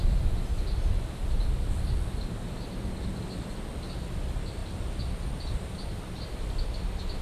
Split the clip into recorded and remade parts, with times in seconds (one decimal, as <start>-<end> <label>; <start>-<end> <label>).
0.0-7.2 recorded